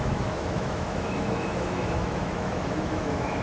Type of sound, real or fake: fake